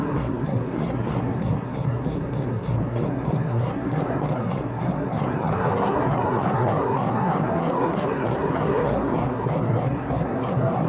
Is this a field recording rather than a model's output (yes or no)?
no